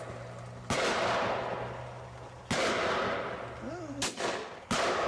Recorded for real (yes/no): yes